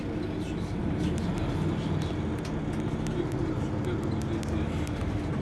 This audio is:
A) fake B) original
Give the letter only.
B